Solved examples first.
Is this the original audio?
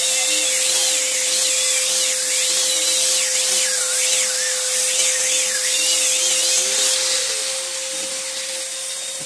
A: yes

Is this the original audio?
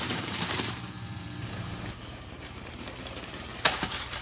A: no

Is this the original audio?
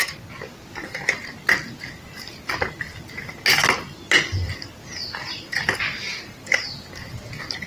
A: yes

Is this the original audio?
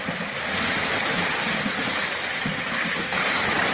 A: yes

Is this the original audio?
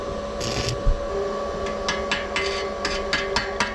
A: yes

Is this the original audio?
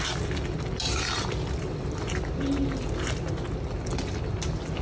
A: yes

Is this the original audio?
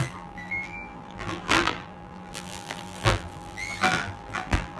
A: no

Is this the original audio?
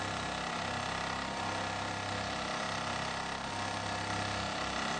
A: yes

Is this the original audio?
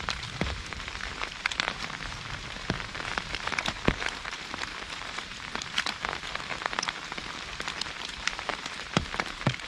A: no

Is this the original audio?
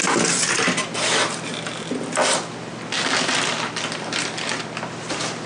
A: yes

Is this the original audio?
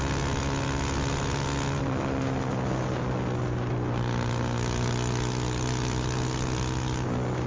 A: yes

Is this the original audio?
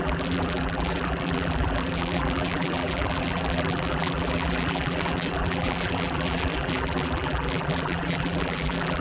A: no